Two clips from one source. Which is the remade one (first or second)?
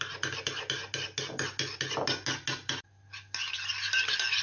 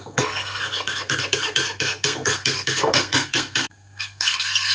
second